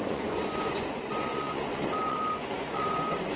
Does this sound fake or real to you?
fake